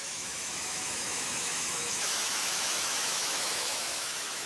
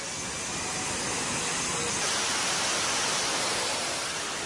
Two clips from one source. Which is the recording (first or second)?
second